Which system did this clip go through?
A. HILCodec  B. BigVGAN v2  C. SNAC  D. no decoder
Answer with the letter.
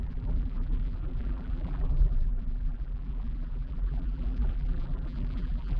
B